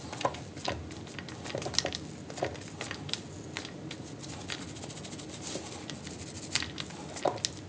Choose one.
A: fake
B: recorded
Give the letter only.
B